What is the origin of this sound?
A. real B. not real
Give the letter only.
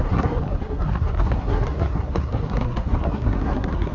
B